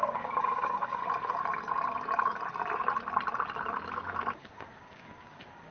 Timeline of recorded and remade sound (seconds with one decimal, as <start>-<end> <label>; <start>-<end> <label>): 0.0-1.0 remade; 1.0-4.4 recorded; 4.4-5.7 remade